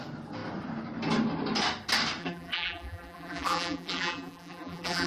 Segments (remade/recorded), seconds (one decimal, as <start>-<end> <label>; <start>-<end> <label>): 0.0-2.2 recorded; 2.2-5.1 remade